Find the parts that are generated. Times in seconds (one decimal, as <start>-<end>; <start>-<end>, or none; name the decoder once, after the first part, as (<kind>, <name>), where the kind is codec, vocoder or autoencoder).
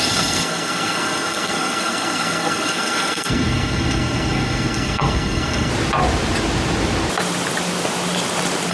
0.0-5.7 (codec, SNAC)